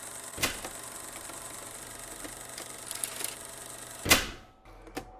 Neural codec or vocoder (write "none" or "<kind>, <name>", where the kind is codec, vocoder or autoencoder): none